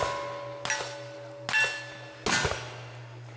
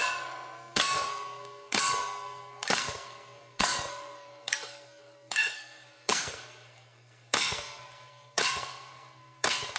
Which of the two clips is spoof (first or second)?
second